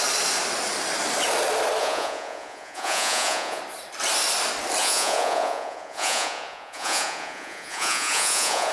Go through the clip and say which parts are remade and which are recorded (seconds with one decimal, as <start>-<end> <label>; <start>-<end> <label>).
0.0-1.8 recorded; 1.8-3.6 remade; 3.6-4.8 recorded; 4.8-8.7 remade